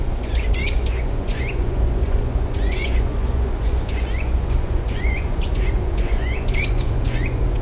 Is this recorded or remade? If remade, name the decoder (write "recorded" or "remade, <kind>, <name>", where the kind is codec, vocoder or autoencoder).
remade, vocoder, Vocos